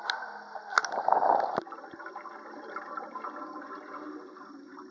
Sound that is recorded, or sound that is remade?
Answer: recorded